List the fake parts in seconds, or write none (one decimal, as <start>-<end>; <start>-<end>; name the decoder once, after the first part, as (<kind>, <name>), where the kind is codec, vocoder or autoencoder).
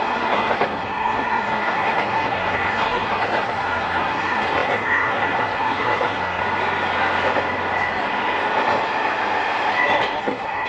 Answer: 0.0-6.4 (codec, SNAC); 10.2-10.7